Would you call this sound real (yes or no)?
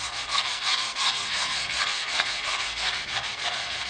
no